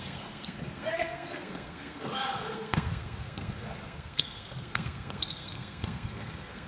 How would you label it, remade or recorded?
remade